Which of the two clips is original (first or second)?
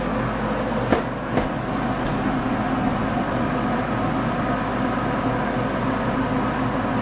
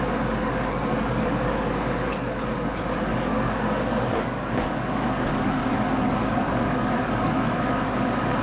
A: first